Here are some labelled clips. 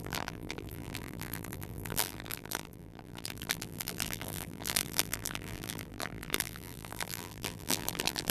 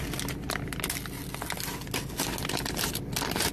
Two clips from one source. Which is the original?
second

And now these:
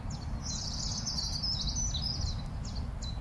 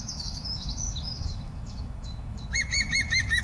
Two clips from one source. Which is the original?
first